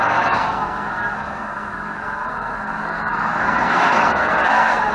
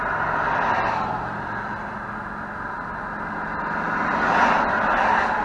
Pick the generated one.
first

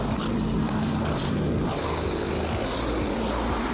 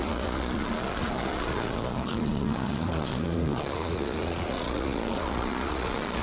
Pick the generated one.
second